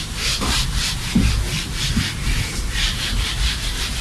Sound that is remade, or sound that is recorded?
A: remade